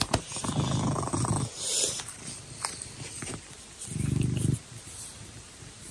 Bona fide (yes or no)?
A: yes